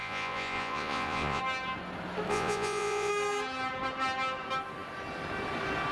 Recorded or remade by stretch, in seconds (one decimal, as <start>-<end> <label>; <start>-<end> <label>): 0.0-1.4 remade; 1.4-2.3 recorded; 2.3-3.1 remade; 3.1-5.9 recorded

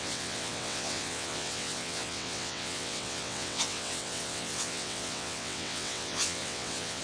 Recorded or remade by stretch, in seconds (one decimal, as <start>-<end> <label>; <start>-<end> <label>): 0.0-7.0 remade

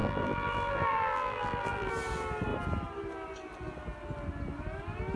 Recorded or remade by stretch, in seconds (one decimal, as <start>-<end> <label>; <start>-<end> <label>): 0.0-1.9 remade; 1.9-5.2 recorded

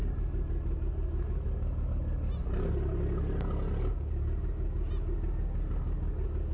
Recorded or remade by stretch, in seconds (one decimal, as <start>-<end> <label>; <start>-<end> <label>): 0.0-6.5 recorded